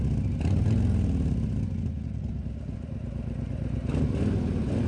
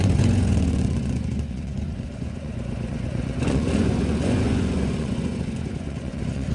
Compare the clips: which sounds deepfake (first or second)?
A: second